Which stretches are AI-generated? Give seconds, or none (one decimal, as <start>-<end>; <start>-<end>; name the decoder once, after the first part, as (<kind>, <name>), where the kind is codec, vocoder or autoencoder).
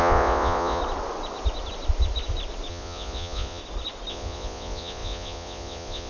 0.0-0.8 (vocoder, Vocos); 2.7-3.6; 4.1-6.1